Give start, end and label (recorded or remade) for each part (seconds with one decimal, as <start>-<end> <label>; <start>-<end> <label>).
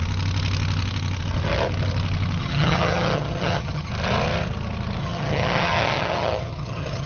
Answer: 0.0-2.4 recorded; 2.4-3.9 remade; 3.9-5.0 recorded; 5.0-7.1 remade